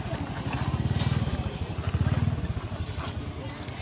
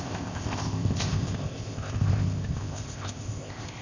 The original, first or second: first